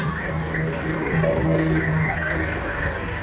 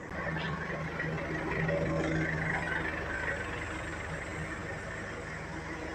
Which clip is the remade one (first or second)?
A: first